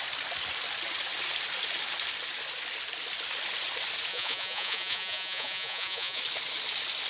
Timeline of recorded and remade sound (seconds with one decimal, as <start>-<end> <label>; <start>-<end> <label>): 0.0-4.1 recorded; 4.1-6.2 remade; 6.2-7.1 recorded